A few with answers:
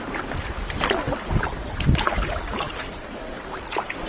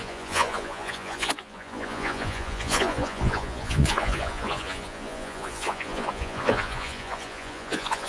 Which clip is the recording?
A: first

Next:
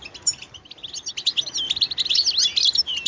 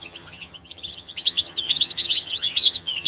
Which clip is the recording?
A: first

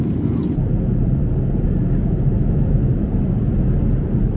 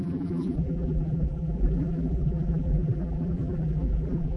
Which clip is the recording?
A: first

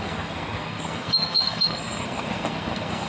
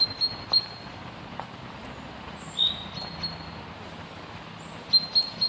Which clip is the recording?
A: second